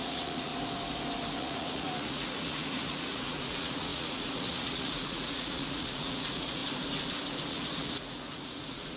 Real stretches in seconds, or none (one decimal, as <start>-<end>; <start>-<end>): 0.5-1.4; 6.6-7.5